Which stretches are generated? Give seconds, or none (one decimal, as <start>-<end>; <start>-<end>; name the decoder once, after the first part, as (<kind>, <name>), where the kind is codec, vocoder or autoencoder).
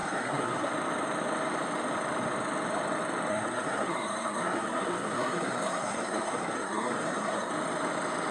0.0-0.7 (codec, SNAC); 3.3-7.5